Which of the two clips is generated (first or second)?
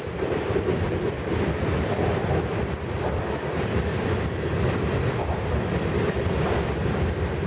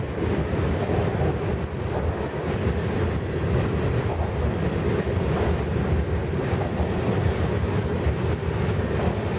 first